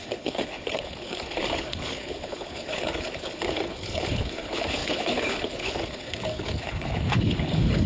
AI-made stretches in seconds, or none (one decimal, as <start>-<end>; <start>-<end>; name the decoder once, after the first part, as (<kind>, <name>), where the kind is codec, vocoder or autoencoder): 0.0-7.9 (codec, HILCodec)